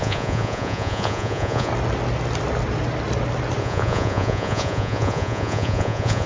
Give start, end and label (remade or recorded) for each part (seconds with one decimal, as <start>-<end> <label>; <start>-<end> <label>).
0.0-1.7 remade; 1.7-3.6 recorded; 3.6-6.3 remade